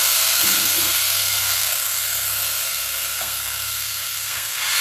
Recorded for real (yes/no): no